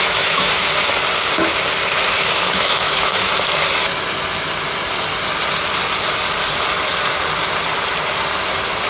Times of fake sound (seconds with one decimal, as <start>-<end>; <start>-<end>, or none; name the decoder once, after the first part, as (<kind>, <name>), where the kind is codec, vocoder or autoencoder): 0.0-0.6 (autoencoder, DAC-VAE); 2.2-3.3